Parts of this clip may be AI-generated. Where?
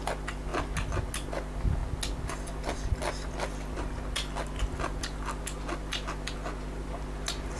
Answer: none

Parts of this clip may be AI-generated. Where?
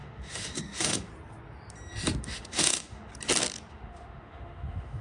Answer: 0.0-1.1 (autoencoder, DAC-VAE); 2.2-3.1; 3.7-5.0